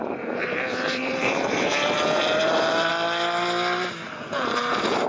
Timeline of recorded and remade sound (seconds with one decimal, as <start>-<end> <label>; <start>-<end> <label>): 0.0-2.9 remade; 2.9-4.1 recorded; 4.1-5.1 remade